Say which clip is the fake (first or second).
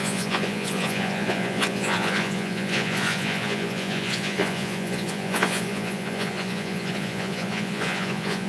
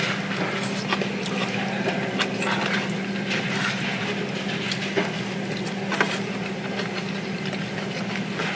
first